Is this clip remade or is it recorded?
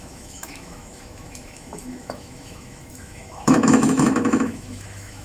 remade